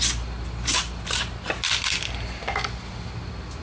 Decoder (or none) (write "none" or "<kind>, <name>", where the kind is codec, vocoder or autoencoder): none